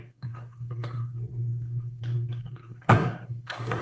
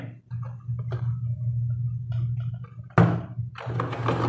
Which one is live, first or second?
second